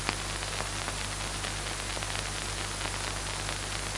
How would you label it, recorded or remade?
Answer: recorded